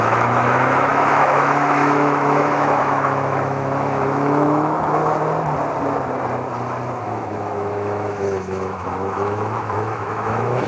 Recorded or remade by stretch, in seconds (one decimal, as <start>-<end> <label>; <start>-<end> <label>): 0.0-5.0 remade; 5.0-7.0 recorded; 7.0-10.7 remade